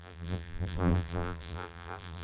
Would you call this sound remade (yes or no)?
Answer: yes